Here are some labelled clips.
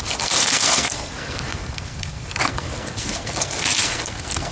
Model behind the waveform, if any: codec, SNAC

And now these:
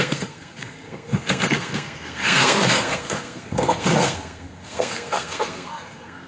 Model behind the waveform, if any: codec, SNAC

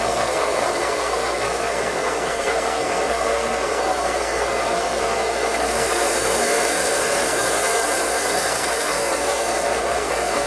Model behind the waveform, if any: codec, SNAC